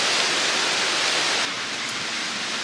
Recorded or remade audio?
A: recorded